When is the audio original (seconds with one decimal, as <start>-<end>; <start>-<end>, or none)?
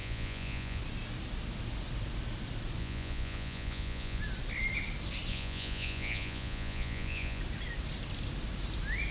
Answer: 0.8-2.8; 4.2-5.3; 7.4-9.1